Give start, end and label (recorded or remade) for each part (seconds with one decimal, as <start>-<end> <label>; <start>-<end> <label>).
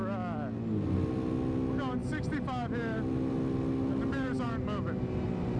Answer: 0.0-5.6 recorded